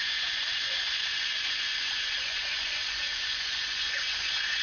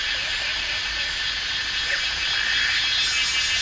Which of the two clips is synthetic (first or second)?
first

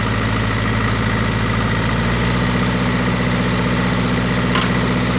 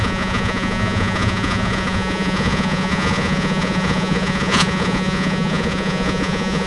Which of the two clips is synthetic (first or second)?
second